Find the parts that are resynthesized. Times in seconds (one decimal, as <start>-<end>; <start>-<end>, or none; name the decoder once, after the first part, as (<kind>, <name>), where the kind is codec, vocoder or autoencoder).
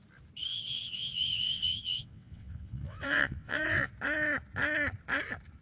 0.5-3.9 (vocoder, WaveNeXt)